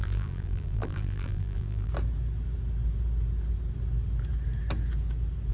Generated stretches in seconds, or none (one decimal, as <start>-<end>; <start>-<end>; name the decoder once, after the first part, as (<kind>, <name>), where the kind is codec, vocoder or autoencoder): 0.0-1.9 (vocoder, BigVGAN v2)